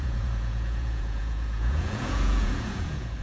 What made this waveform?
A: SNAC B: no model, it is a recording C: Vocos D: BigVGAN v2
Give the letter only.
C